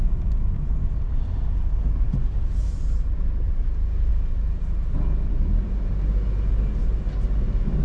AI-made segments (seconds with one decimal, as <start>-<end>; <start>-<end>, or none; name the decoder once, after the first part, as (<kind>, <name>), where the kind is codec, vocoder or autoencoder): none